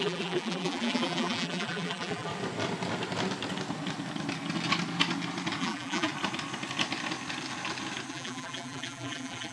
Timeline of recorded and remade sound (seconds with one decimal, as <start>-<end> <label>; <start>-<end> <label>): 0.0-2.3 remade; 2.3-5.6 recorded; 5.6-6.1 remade; 6.1-8.1 recorded; 8.1-9.5 remade